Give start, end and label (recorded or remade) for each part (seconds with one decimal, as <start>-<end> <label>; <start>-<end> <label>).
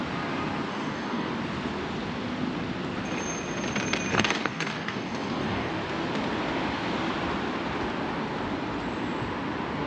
0.0-0.7 recorded; 0.7-1.3 remade; 1.3-4.1 recorded; 4.1-5.7 remade; 5.7-9.9 recorded